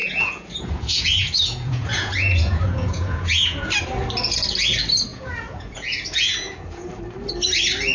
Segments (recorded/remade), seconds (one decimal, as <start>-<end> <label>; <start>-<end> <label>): 0.0-3.8 remade; 3.8-5.1 recorded; 5.1-7.0 remade; 7.0-7.9 recorded